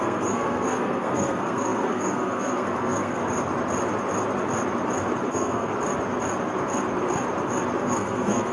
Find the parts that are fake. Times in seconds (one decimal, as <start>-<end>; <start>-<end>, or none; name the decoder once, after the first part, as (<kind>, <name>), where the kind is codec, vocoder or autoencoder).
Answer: 0.0-3.2 (codec, SNAC); 5.3-5.7; 7.8-8.5